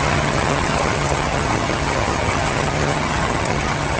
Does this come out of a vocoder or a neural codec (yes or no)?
yes